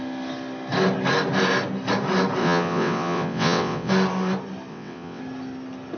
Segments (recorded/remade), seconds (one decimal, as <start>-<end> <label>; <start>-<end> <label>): 0.0-2.4 recorded; 2.4-3.9 remade; 3.9-4.7 recorded; 4.7-5.2 remade; 5.2-6.0 recorded